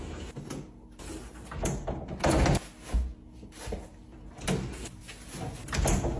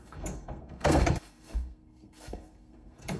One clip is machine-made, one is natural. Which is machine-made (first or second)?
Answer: second